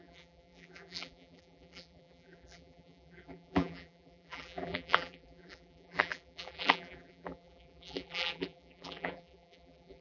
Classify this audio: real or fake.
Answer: fake